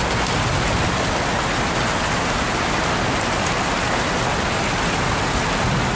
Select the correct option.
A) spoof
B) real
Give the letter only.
B